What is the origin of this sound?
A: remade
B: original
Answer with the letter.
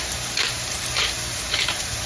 A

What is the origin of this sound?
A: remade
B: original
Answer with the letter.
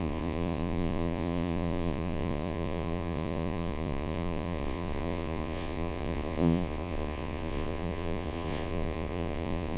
A